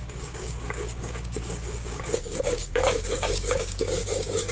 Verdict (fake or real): fake